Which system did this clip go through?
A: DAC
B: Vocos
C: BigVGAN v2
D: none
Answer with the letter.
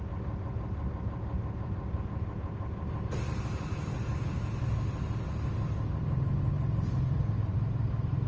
D